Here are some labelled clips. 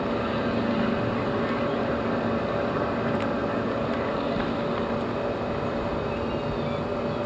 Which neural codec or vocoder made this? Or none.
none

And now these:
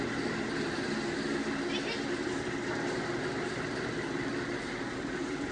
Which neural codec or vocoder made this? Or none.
none